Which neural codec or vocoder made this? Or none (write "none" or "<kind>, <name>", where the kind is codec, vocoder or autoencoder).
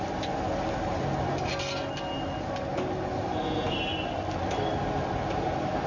none